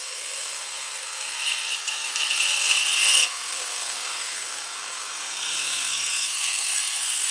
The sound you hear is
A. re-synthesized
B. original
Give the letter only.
A